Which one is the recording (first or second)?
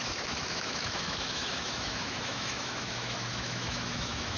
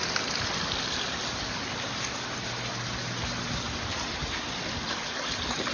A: second